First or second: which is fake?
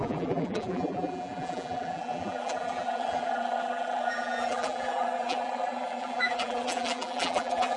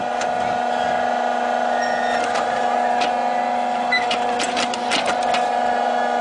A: first